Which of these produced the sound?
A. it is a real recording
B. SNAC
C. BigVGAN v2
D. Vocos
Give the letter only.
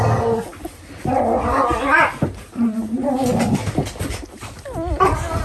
A